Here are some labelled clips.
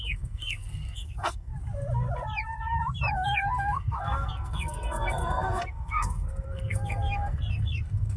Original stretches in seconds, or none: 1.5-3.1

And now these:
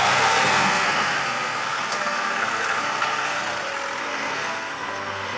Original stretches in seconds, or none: 3.4-4.0

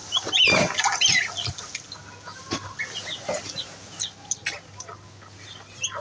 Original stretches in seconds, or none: 0.0-6.0

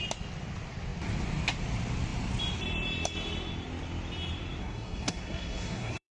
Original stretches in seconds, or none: 0.0-4.6

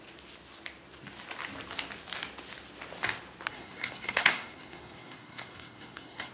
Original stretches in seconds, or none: 0.0-3.5